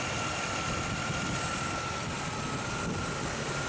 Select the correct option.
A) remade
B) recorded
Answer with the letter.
B